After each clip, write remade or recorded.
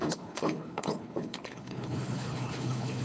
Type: remade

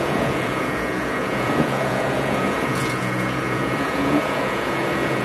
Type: remade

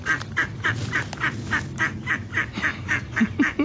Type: recorded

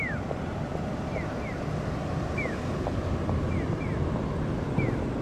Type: recorded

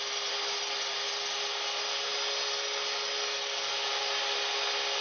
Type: recorded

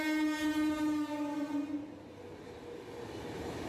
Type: recorded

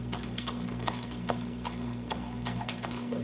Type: remade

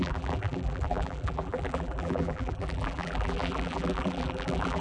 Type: remade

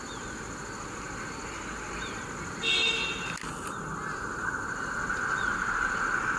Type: recorded